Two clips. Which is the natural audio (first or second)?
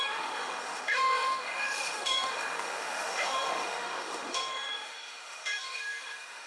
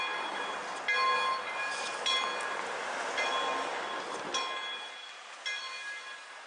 second